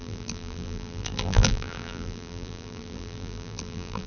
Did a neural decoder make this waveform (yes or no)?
yes